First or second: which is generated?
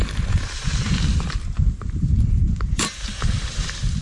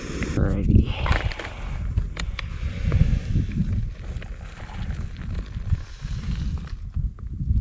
first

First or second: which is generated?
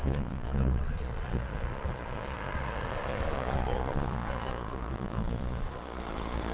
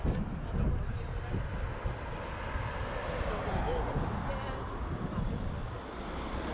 first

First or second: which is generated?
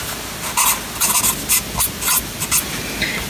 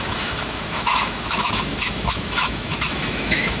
second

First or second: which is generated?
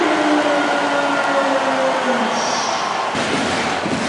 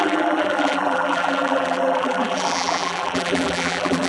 second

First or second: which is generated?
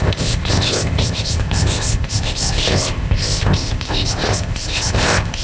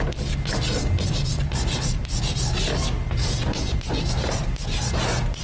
first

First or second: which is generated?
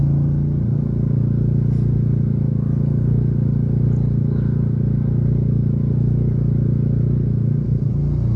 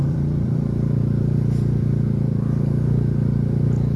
second